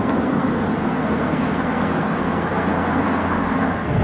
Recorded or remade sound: remade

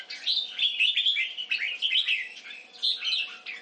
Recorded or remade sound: recorded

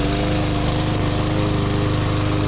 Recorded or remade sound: recorded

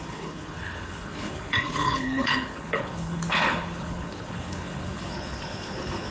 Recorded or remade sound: remade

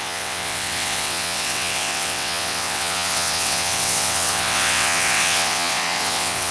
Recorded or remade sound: remade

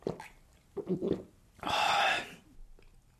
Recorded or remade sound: recorded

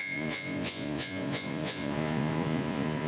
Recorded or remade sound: remade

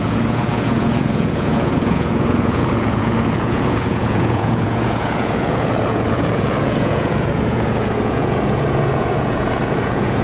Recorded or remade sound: remade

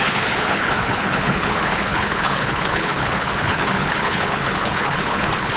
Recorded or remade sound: remade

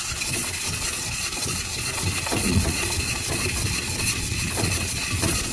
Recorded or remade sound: remade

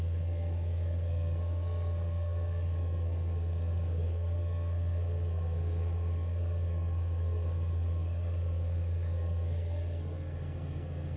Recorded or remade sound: remade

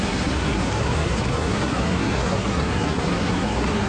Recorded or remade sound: remade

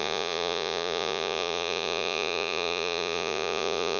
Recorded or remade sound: remade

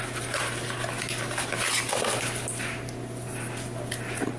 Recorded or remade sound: recorded